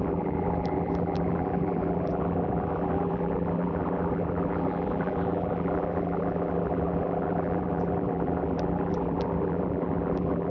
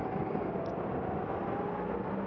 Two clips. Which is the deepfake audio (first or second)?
first